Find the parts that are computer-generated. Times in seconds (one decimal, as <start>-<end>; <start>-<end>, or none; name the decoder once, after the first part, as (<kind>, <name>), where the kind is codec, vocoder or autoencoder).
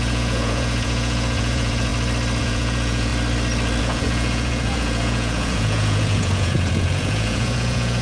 0.0-1.9 (vocoder, Vocos); 2.4-3.1; 3.8-8.0